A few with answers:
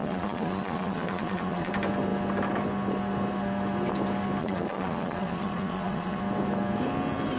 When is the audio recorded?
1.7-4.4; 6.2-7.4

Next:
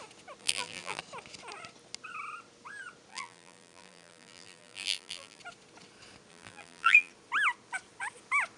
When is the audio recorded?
0.0-0.4; 1.0-3.1; 5.4-6.3; 7.1-8.6

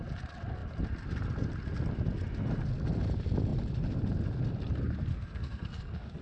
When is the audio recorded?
0.0-5.1

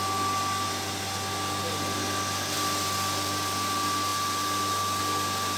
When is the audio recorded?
0.0-5.6

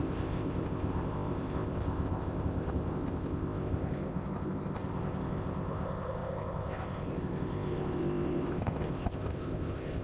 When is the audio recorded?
none